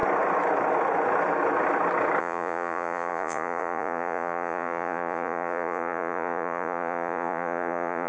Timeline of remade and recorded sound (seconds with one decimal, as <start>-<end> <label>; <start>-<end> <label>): 0.0-2.2 recorded; 2.2-8.1 remade